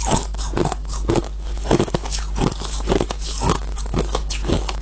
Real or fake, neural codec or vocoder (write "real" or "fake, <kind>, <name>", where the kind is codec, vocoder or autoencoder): fake, codec, DAC